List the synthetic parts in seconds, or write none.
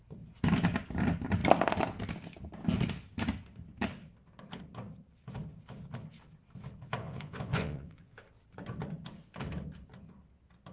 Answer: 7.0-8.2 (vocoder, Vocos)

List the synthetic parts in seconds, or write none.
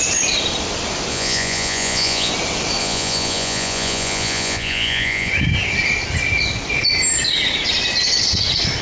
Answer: 1.1-2.3 (vocoder, Vocos); 2.8-5.3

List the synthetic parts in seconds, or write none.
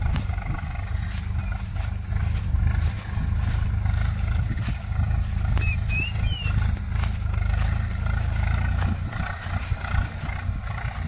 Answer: none